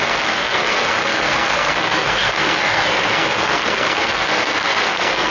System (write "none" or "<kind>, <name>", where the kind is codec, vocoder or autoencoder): codec, SNAC